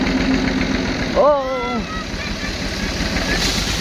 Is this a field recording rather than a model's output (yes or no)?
yes